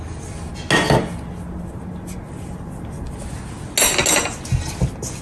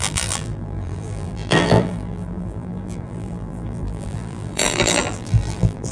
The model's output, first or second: second